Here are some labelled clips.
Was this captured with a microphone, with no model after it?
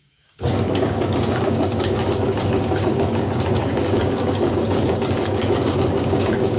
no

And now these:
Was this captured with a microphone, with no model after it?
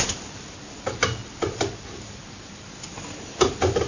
yes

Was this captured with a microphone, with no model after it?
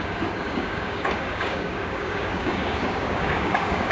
no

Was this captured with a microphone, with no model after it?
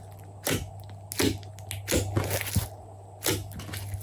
yes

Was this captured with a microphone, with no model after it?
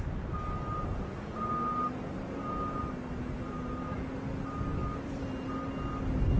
yes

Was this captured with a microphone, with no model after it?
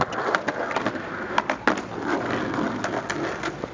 yes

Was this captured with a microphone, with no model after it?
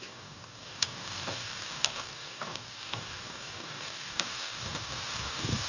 no